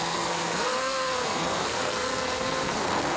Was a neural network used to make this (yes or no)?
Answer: yes